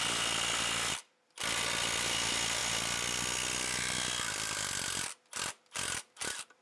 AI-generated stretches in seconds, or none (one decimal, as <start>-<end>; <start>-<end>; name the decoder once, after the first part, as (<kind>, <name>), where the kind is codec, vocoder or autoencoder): none